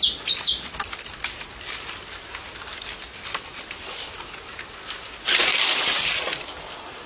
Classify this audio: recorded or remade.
recorded